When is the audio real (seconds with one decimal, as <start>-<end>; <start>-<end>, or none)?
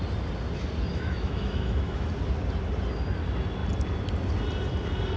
0.0-0.9; 2.1-5.2